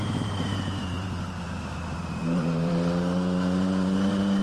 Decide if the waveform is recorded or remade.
remade